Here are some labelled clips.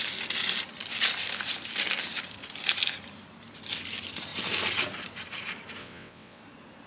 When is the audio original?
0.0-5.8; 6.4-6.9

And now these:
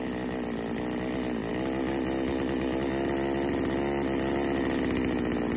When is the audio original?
0.0-5.6

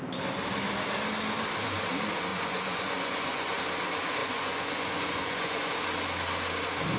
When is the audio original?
0.0-2.3; 3.6-4.2; 5.7-7.0